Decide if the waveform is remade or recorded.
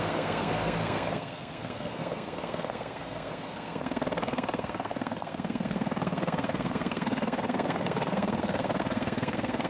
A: remade